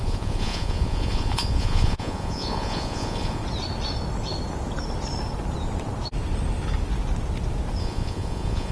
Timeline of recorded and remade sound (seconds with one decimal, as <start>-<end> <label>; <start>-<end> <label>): 0.0-3.4 remade; 3.4-7.8 recorded; 7.8-8.7 remade